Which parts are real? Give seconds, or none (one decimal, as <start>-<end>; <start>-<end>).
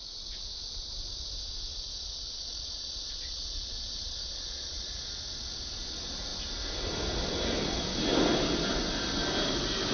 0.0-1.7; 5.1-9.9